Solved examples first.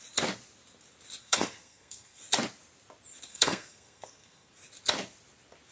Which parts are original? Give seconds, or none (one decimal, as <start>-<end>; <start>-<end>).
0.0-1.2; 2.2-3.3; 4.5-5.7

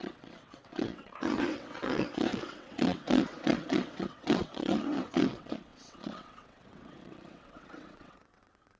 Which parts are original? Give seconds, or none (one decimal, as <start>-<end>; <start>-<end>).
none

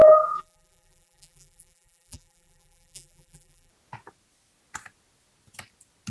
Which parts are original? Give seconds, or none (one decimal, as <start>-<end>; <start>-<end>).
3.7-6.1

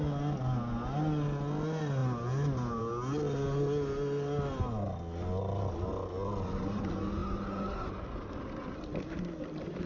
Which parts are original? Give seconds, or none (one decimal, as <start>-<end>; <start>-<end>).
0.0-9.9

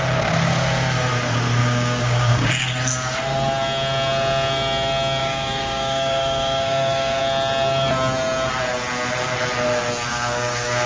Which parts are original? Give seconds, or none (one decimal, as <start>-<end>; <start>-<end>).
0.0-1.6; 2.5-5.2; 7.2-10.1